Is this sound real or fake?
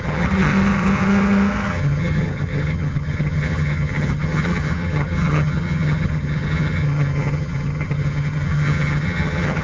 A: fake